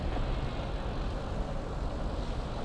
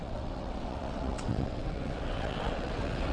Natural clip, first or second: first